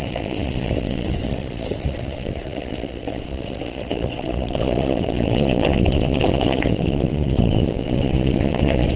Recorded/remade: remade